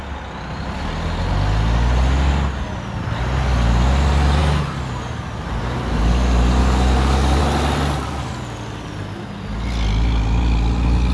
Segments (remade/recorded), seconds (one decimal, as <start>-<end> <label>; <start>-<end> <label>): 0.0-6.6 recorded; 6.6-7.4 remade; 7.4-11.1 recorded